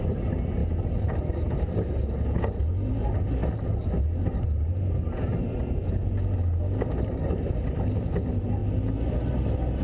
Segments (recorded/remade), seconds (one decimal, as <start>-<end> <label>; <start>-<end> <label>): 0.0-9.8 recorded